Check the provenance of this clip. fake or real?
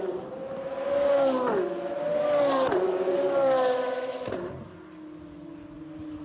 real